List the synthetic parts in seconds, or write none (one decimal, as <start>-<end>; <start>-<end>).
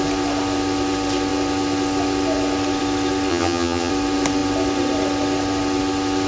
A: 3.3-3.9